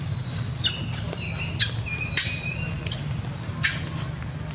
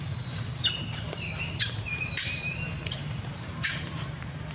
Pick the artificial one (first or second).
second